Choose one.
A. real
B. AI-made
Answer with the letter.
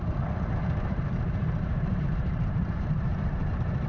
B